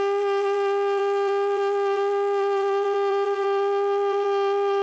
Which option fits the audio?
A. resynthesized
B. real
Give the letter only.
A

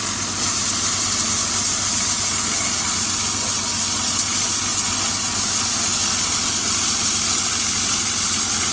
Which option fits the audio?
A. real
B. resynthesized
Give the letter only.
A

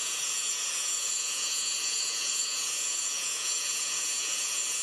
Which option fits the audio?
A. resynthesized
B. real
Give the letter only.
A